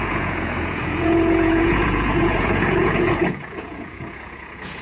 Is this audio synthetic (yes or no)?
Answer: yes